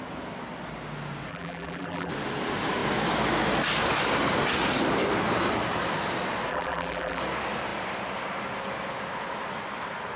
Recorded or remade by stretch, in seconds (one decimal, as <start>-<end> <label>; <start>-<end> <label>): 0.0-1.3 recorded; 1.3-2.1 remade; 2.1-6.5 recorded; 6.5-7.2 remade; 7.2-10.2 recorded